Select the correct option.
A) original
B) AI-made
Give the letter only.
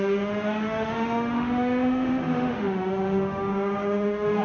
B